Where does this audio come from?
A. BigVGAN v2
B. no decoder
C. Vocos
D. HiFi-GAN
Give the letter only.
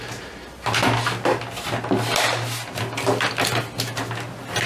B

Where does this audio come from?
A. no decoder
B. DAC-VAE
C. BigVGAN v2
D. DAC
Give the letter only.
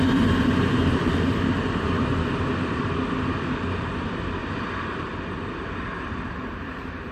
C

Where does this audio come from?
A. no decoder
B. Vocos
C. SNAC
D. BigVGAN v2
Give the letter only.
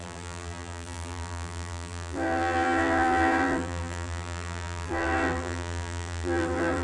D